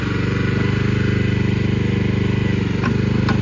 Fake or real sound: real